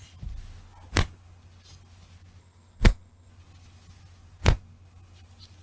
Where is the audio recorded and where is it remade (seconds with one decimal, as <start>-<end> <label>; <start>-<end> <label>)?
0.0-2.4 recorded; 2.4-3.3 remade; 3.3-5.6 recorded